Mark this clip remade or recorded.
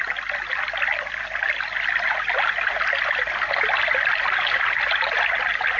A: recorded